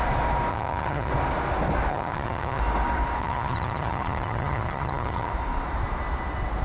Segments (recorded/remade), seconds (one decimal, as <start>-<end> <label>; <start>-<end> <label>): 0.0-0.5 recorded; 0.5-1.1 remade; 1.1-1.9 recorded; 1.9-2.6 remade; 2.6-3.2 recorded; 3.2-5.3 remade; 5.3-6.6 recorded